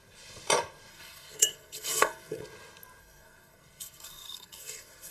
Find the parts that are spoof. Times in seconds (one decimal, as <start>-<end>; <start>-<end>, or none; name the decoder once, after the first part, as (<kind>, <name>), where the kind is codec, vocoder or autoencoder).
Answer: 0.9-2.4 (codec, SNAC); 3.0-5.1